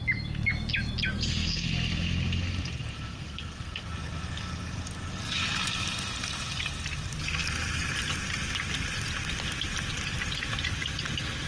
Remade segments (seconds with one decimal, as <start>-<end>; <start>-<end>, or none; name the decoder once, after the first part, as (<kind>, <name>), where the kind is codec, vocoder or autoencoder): 1.1-1.7 (codec, SNAC); 3.1-3.9